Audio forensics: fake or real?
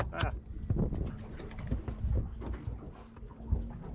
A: real